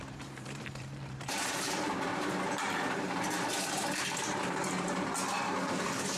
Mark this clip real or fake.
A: fake